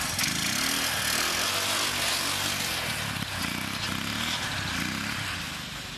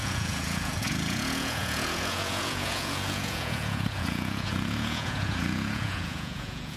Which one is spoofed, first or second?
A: second